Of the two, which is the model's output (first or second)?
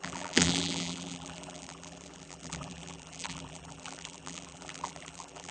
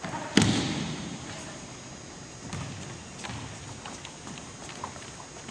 first